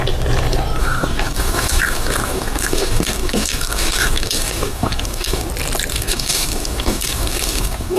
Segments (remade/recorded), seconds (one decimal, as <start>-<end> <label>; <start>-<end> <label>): 0.0-0.8 recorded; 0.8-5.5 remade; 5.5-5.9 recorded; 5.9-8.0 remade